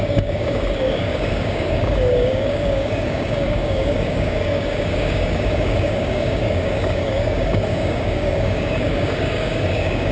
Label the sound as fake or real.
fake